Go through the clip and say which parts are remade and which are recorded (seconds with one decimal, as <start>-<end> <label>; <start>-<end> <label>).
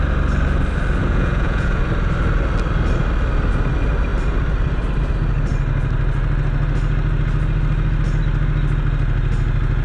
0.0-1.0 recorded; 1.0-1.8 remade; 1.8-9.8 recorded